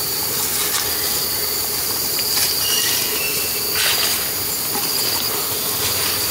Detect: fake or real real